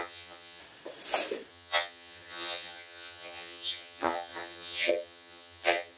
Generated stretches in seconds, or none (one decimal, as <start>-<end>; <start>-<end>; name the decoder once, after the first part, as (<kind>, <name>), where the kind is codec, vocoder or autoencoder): 0.0-0.6 (vocoder, HiFi-GAN); 1.5-6.0